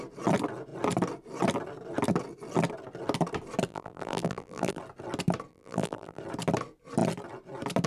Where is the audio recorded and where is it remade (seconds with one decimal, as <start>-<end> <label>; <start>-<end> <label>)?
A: 0.0-3.7 recorded; 3.7-4.8 remade; 4.8-5.5 recorded; 5.5-6.2 remade; 6.2-7.9 recorded